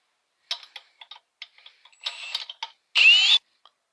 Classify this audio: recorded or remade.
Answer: recorded